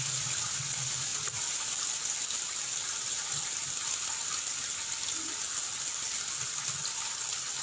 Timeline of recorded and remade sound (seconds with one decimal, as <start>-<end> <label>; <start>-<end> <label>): 0.0-7.6 recorded